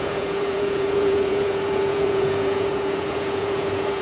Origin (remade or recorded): remade